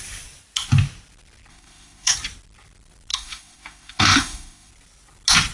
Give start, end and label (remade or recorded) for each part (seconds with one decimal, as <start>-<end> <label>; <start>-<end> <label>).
0.0-1.5 recorded; 1.5-2.1 remade; 2.1-3.1 recorded; 3.1-4.7 remade; 4.7-5.5 recorded